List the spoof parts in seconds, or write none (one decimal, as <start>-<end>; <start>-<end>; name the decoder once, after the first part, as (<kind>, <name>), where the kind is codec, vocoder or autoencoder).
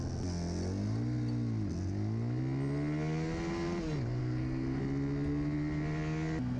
4.2-4.8 (codec, SNAC)